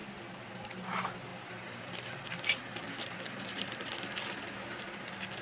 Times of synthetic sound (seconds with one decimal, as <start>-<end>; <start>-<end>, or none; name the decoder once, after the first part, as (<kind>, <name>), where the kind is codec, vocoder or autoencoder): 1.3-4.5 (vocoder, BigVGAN v2)